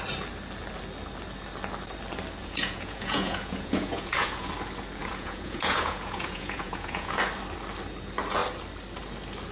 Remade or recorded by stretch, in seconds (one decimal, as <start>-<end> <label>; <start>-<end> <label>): 0.0-2.4 recorded; 2.4-4.5 remade; 4.5-5.0 recorded; 5.0-7.2 remade; 7.2-9.5 recorded